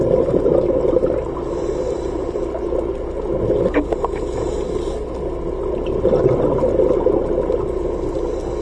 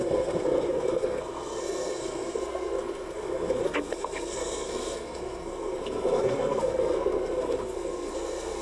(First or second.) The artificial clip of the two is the second